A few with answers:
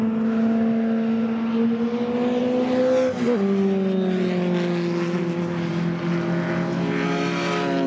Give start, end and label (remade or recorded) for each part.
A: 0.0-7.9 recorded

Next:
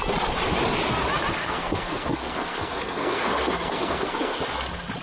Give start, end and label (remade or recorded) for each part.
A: 0.0-1.4 recorded; 1.4-4.4 remade; 4.4-5.0 recorded

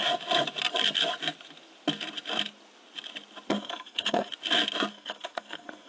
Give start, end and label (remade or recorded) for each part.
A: 0.0-3.5 recorded; 3.5-4.3 remade; 4.3-4.9 recorded; 4.9-5.9 remade